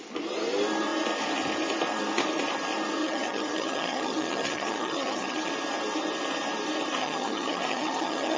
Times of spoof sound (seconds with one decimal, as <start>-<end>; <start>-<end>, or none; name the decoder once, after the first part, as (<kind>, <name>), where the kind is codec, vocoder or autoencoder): 3.0-5.5 (vocoder, HiFi-GAN); 7.0-8.4